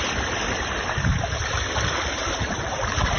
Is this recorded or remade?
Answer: recorded